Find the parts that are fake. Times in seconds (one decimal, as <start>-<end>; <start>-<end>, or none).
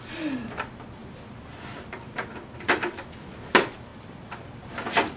3.9-4.6